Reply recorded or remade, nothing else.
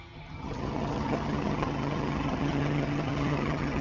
remade